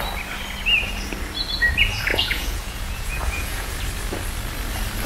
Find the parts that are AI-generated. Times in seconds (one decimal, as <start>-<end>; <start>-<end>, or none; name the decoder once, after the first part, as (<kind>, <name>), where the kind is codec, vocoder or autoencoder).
2.1-3.7 (vocoder, Vocos)